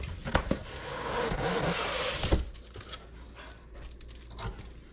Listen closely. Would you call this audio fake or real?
real